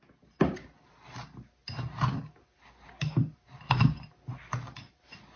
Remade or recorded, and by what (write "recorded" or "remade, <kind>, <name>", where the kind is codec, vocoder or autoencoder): recorded